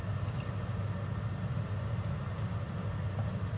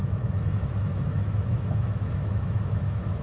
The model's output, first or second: second